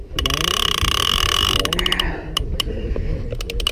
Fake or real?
fake